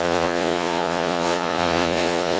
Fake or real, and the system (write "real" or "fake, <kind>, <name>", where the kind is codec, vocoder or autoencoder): fake, vocoder, Vocos